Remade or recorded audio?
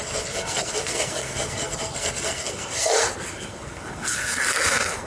remade